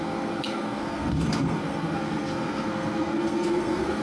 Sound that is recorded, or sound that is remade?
remade